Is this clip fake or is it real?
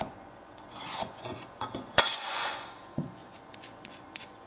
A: fake